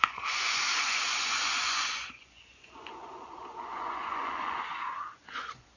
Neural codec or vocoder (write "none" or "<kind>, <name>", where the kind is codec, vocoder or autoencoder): vocoder, Vocos